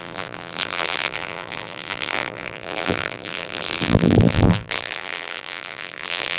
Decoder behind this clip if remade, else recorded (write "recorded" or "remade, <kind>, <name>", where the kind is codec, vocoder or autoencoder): remade, vocoder, BigVGAN v2